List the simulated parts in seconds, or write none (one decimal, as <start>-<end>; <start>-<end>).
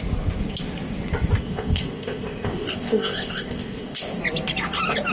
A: 1.4-4.2